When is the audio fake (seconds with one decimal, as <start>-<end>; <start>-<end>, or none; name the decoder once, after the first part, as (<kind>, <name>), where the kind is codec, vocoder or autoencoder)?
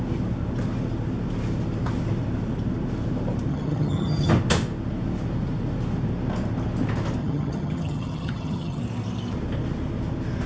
3.5-4.3 (vocoder, HiFi-GAN); 7.2-8.8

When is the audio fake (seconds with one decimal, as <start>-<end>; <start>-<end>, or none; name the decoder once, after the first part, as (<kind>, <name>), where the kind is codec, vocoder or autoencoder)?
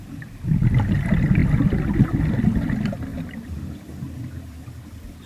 none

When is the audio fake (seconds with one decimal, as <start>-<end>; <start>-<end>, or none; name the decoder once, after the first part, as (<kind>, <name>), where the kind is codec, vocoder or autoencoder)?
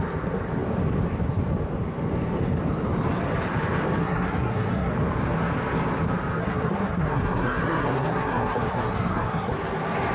4.0-4.9 (codec, SNAC); 6.4-9.5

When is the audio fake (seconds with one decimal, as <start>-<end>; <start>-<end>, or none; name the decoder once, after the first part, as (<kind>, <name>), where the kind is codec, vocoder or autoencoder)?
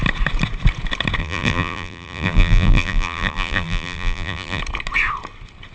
1.2-4.6 (vocoder, BigVGAN v2)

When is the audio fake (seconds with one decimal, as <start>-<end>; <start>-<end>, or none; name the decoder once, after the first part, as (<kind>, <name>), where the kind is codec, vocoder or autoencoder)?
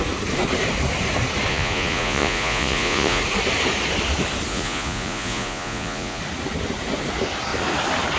1.5-3.2 (vocoder, Vocos); 4.5-6.2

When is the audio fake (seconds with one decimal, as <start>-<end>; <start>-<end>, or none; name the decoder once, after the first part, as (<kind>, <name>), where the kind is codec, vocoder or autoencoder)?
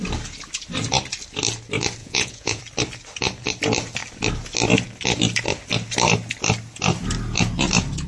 2.0-2.6 (vocoder, Vocos)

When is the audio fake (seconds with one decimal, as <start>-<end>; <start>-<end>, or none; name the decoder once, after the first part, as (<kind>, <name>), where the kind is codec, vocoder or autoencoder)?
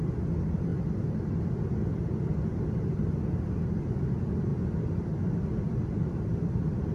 4.5-6.9 (vocoder, BigVGAN v2)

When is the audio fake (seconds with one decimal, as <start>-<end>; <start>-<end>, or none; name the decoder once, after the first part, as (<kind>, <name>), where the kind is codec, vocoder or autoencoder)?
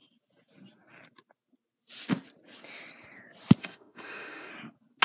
3.6-4.5 (autoencoder, DAC-VAE)